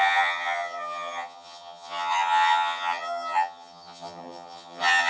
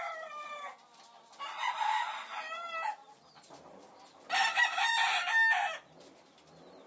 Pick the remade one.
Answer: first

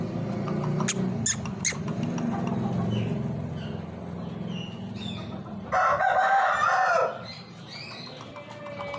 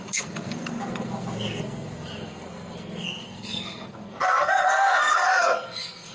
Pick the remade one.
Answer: second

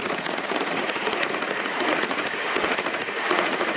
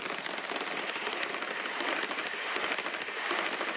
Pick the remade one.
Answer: first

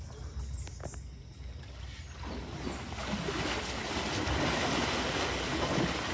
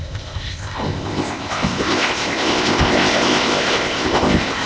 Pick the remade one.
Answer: second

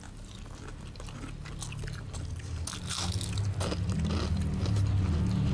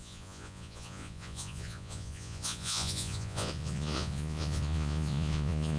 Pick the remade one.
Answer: second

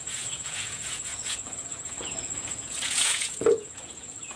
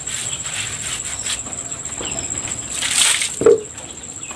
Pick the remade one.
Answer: first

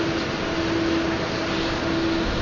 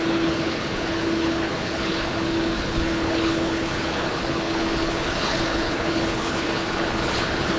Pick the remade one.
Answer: second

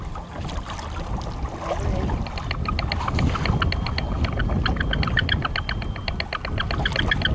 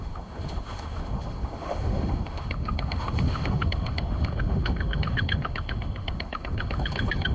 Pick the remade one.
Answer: second